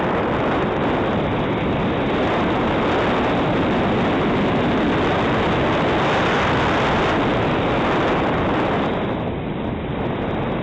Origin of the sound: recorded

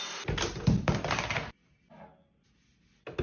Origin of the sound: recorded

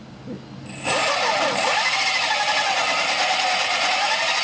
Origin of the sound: recorded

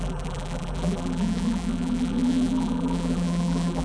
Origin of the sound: remade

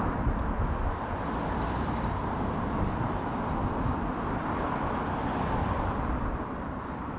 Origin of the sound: remade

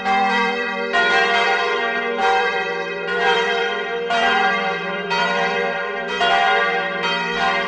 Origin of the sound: remade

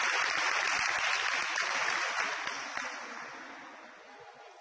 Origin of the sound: recorded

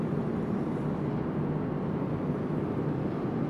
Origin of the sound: recorded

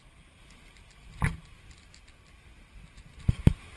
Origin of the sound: recorded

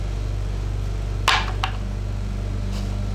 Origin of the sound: recorded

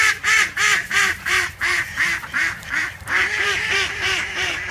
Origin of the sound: remade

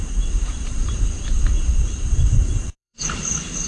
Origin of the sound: remade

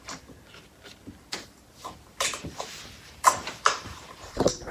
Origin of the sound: remade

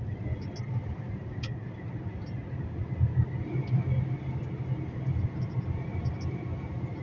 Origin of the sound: recorded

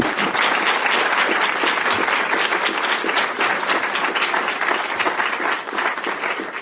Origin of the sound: recorded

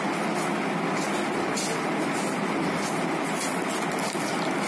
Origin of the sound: recorded